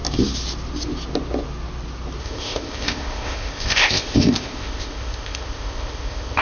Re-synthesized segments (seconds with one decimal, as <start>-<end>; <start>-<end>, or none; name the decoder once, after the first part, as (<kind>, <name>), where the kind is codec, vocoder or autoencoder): 2.2-6.4 (codec, ZipCodec)